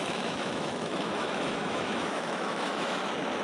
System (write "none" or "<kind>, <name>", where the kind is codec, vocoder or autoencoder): autoencoder, DAC-VAE